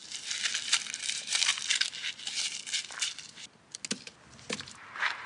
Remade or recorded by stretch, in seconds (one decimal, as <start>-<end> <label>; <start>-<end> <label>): 0.0-1.0 recorded; 1.0-1.5 remade; 1.5-4.7 recorded; 4.7-5.3 remade